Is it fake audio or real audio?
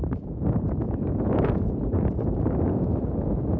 fake